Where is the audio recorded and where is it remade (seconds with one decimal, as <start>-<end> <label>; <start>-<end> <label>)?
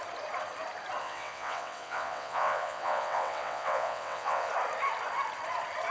0.0-1.0 recorded; 1.0-4.5 remade; 4.5-5.9 recorded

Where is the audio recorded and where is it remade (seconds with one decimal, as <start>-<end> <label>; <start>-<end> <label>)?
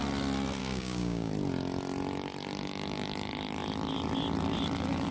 0.0-0.6 recorded; 0.6-1.3 remade; 1.3-5.1 recorded